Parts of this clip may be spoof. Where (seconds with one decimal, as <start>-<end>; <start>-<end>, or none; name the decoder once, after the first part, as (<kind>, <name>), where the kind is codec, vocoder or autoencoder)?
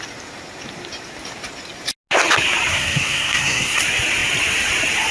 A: 2.7-3.8 (codec, SNAC)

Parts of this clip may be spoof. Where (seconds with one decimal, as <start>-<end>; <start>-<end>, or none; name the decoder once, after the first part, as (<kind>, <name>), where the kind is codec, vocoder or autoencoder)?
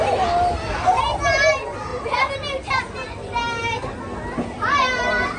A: none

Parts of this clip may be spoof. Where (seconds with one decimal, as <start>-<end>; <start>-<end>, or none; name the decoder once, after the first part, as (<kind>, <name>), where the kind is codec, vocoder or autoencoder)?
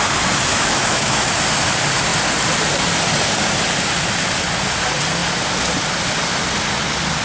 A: 0.5-1.3 (autoencoder, DAC-VAE)